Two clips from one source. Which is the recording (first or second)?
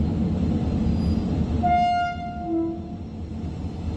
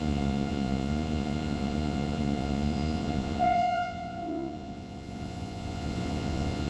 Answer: first